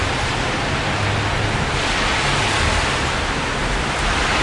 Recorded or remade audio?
recorded